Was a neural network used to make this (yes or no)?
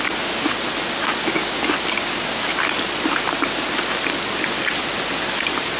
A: no